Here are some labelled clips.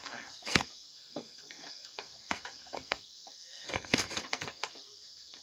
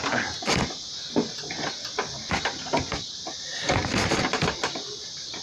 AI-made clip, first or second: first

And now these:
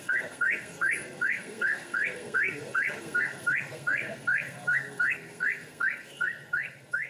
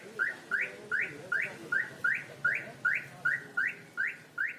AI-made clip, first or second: first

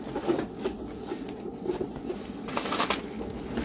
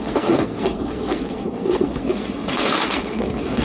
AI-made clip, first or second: second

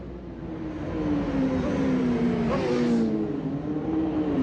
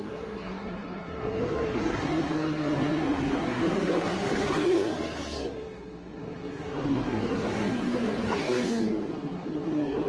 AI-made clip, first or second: second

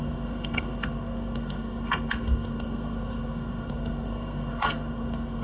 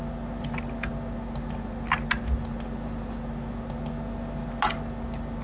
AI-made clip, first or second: first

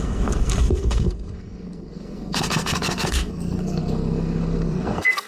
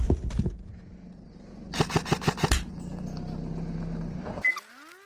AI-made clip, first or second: first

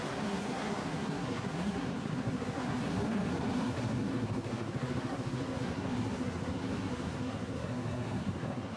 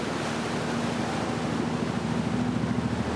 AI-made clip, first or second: first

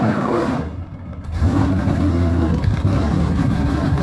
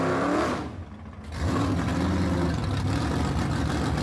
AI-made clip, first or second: first